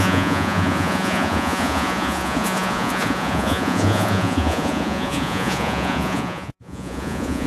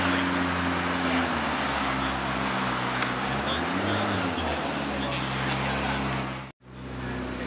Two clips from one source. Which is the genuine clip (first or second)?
second